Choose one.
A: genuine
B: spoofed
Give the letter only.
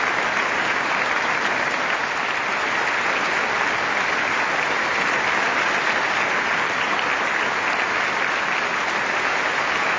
A